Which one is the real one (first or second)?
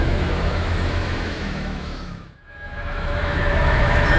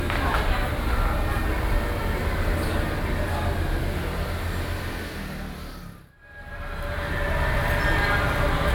second